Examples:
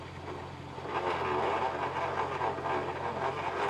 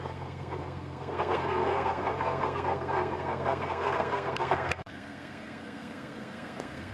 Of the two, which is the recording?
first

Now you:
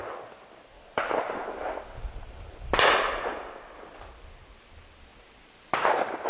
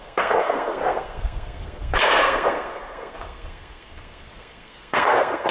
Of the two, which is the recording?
first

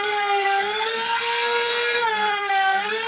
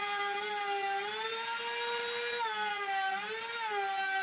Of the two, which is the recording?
second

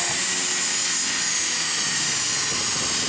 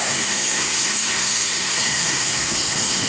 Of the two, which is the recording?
first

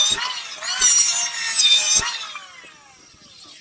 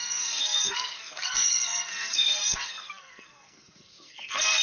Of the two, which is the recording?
first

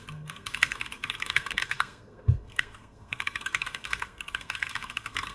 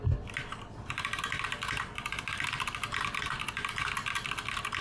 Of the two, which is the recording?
second